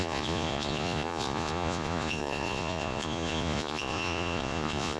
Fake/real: fake